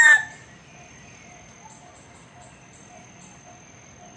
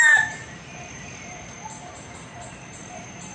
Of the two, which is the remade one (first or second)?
second